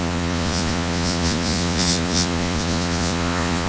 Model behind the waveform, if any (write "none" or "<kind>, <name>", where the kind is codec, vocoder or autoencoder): vocoder, Vocos